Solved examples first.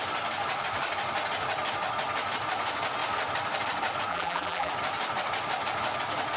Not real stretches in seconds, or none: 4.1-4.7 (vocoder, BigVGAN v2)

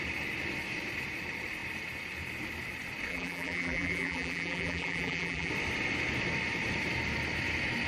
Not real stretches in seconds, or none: 3.1-5.5 (vocoder, BigVGAN v2)